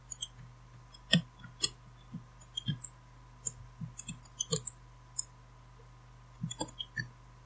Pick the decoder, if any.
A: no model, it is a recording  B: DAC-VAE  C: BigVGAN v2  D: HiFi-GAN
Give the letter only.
A